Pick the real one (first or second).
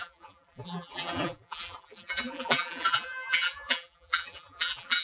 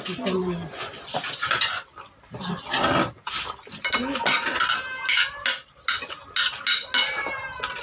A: second